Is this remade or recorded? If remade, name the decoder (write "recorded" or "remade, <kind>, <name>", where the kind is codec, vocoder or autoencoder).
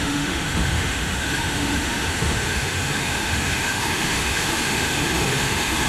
remade, autoencoder, DAC-VAE